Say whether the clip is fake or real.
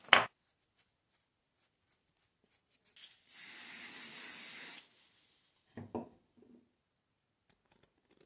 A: real